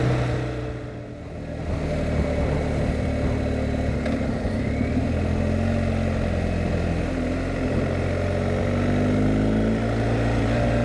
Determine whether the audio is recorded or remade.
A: recorded